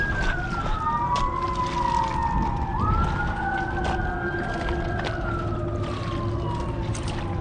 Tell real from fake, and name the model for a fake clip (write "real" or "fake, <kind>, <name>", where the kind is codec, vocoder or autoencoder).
real